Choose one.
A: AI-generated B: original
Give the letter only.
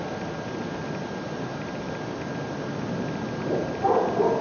B